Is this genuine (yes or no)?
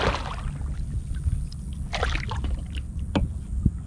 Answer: yes